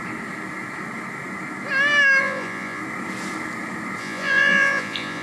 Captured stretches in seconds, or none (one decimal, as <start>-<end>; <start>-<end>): 0.0-2.2; 2.8-4.0